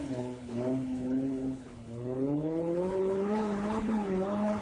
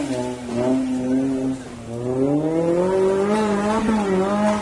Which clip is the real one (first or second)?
second